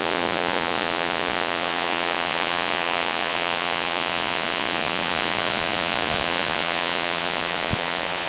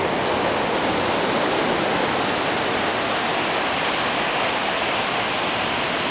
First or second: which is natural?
second